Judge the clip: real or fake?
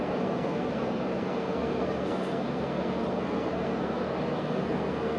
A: fake